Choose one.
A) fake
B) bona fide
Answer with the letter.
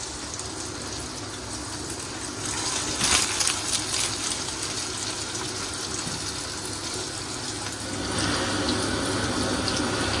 B